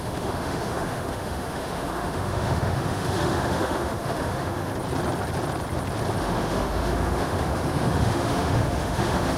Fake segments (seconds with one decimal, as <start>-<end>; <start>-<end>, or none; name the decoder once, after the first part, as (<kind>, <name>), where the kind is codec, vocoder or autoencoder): 0.0-4.7 (autoencoder, DAC-VAE); 6.2-9.4